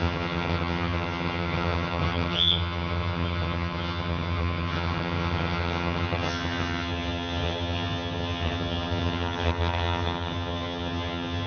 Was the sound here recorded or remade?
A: remade